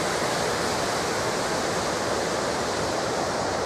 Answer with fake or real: real